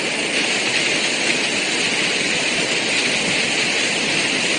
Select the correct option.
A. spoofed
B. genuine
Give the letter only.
B